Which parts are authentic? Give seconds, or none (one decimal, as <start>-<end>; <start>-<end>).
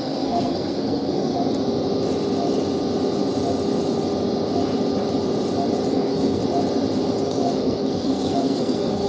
1.3-5.9; 6.4-7.2